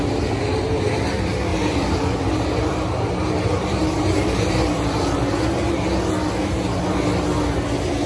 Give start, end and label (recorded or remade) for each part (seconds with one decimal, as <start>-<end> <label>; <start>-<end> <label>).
0.0-1.5 recorded; 1.5-5.0 remade; 5.0-8.1 recorded